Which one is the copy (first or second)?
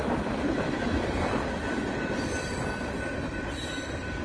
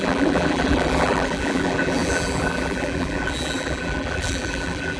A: second